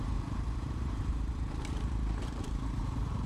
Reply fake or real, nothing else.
fake